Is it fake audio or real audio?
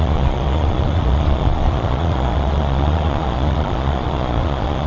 fake